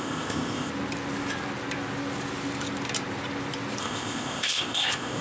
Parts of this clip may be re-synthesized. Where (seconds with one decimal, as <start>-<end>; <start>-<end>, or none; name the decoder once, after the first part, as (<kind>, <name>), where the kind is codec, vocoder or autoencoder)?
0.0-0.7 (codec, ZipCodec); 3.8-5.2

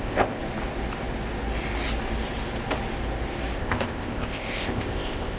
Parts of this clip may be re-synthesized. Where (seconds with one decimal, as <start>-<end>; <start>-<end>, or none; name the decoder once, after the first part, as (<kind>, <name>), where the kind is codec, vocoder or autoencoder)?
0.0-0.4 (codec, ZipCodec); 3.6-5.4

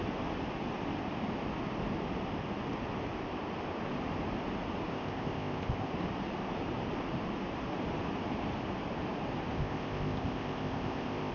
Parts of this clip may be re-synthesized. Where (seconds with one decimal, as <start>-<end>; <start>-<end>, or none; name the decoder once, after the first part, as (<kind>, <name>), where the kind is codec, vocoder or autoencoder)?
4.9-5.9 (codec, ZipCodec); 9.5-11.3

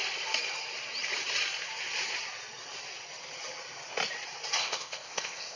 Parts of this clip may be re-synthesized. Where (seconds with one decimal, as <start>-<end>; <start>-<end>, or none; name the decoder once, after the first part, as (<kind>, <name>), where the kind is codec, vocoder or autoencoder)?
4.6-5.6 (codec, ZipCodec)

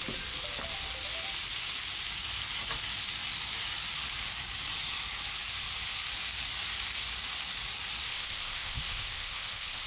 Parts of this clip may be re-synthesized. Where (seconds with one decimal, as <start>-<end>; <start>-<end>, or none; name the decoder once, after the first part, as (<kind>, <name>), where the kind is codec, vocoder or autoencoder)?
8.1-9.9 (codec, ZipCodec)